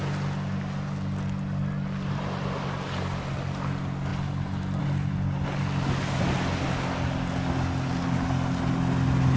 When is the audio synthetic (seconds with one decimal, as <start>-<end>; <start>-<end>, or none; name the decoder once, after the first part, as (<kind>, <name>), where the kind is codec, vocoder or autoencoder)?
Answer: none

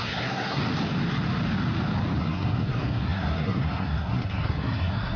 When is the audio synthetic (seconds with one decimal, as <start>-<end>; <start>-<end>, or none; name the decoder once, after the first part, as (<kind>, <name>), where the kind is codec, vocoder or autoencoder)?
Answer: 0.0-0.6 (codec, SNAC); 2.2-5.2

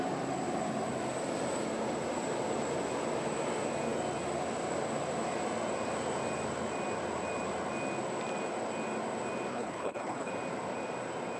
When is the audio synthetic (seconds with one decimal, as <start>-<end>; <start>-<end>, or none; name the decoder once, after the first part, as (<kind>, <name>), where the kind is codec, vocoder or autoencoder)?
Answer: 9.5-10.3 (codec, HILCodec)

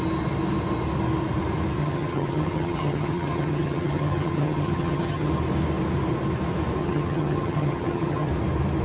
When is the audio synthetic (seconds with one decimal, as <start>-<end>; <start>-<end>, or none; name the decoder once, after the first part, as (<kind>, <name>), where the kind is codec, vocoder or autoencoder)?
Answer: 1.8-5.3 (vocoder, HiFi-GAN); 6.8-8.3

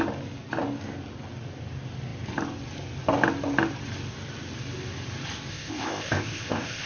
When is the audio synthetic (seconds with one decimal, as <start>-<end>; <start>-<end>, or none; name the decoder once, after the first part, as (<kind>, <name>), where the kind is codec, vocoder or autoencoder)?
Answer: 5.5-6.9 (codec, ZipCodec)